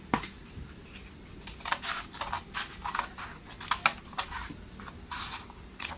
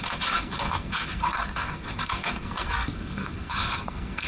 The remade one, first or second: second